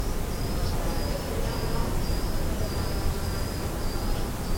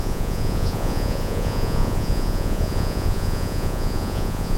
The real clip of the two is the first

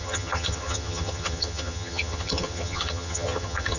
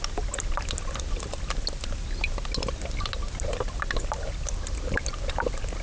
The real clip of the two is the second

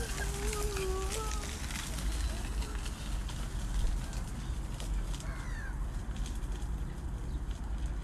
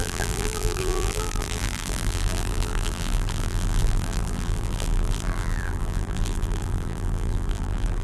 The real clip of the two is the first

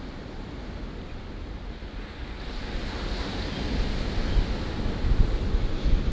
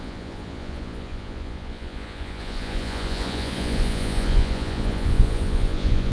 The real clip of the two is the first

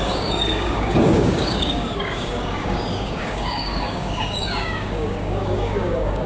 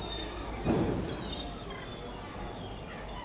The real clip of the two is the second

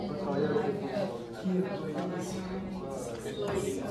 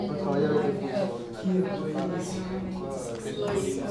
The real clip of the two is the second